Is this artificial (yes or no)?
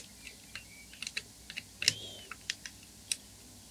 no